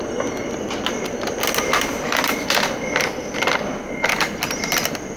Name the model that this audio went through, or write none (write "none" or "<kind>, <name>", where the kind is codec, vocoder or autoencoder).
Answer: none